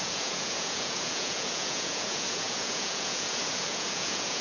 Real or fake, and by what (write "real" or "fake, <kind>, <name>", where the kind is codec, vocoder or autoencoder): fake, vocoder, Vocos